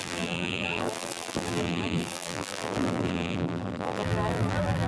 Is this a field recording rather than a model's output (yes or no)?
no